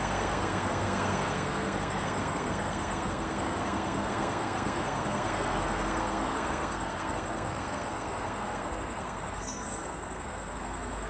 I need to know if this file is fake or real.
fake